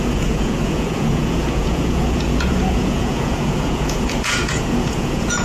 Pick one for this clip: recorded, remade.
remade